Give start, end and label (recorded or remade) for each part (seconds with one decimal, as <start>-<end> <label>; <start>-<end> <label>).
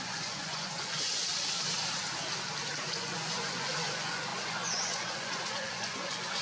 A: 0.0-1.1 remade; 1.1-2.8 recorded; 2.8-6.4 remade